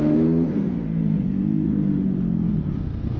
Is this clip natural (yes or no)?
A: no